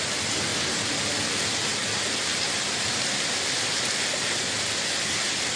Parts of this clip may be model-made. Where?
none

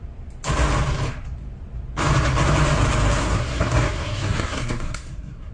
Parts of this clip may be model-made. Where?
3.2-5.5 (codec, SNAC)

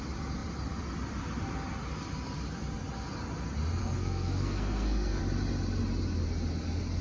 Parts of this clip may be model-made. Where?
3.8-5.2 (codec, SNAC)

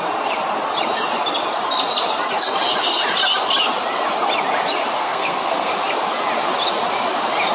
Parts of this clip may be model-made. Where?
5.0-5.7 (codec, SNAC)

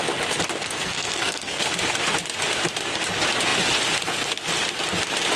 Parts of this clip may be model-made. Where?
0.6-1.6 (codec, SNAC)

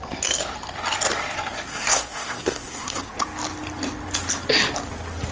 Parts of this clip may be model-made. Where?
1.7-3.0 (codec, SNAC)

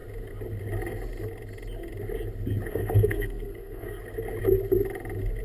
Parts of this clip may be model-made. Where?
2.7-4.0 (codec, SNAC)